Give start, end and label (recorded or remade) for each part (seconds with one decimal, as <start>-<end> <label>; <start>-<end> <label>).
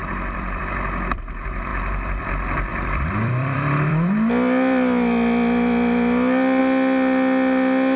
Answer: 0.0-0.6 remade; 0.6-1.7 recorded; 1.7-2.3 remade; 2.3-2.7 recorded; 2.7-6.6 remade; 6.6-8.0 recorded